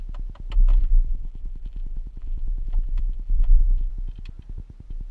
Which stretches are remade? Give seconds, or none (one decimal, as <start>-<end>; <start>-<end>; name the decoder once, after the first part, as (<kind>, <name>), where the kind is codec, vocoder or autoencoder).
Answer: 0.8-3.9 (vocoder, BigVGAN v2)

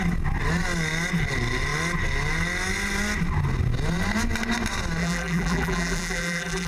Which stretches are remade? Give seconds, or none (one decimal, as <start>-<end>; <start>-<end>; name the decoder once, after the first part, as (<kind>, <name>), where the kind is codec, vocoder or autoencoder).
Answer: 5.0-6.7 (vocoder, BigVGAN v2)

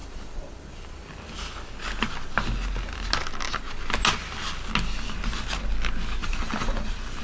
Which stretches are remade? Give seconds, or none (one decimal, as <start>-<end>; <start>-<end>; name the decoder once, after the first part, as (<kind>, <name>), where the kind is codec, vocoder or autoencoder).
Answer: 0.0-1.3 (vocoder, BigVGAN v2); 6.2-7.2

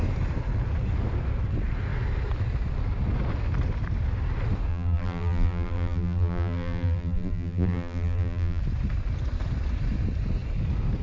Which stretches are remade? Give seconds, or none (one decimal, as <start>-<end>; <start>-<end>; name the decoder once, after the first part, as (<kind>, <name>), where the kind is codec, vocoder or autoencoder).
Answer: 4.7-8.6 (vocoder, BigVGAN v2)

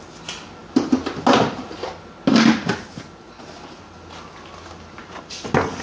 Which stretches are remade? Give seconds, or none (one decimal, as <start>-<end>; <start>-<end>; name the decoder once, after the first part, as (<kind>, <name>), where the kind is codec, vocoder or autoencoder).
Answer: none

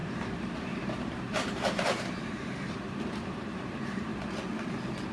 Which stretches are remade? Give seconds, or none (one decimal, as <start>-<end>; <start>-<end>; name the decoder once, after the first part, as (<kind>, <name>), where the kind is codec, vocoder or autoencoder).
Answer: 0.0-4.1 (vocoder, BigVGAN v2)